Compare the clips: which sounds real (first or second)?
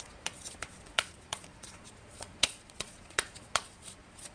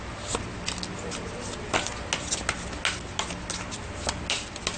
second